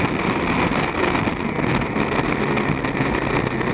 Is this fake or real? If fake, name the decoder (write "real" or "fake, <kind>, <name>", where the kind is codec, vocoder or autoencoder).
real